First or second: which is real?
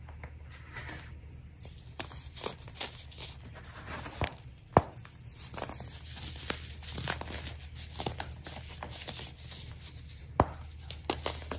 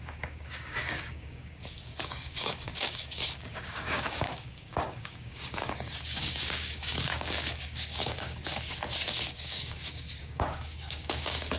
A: first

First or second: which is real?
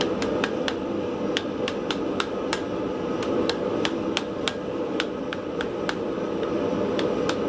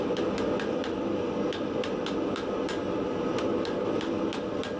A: second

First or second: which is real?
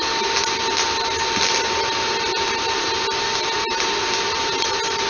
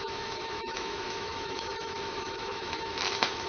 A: first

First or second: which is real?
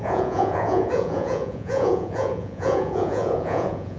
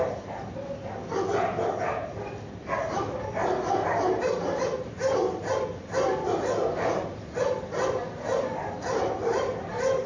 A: second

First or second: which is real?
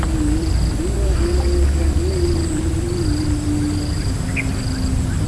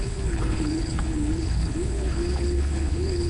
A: first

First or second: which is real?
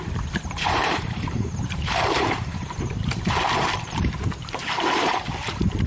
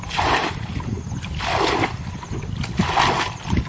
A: second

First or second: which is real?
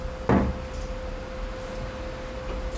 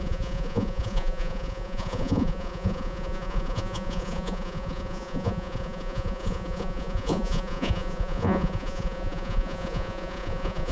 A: first